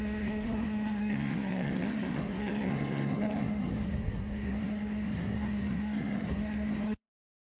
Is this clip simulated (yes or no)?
yes